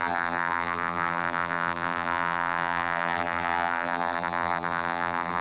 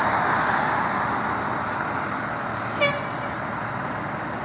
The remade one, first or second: first